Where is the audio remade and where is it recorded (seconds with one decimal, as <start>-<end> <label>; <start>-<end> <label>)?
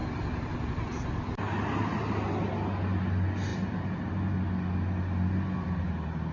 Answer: 0.0-2.1 remade; 2.1-3.5 recorded; 3.5-4.1 remade; 4.1-6.3 recorded